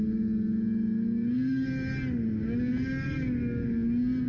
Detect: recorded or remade recorded